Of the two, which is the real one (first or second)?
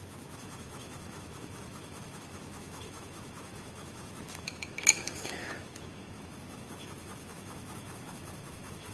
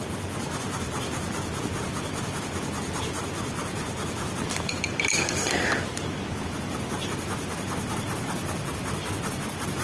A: second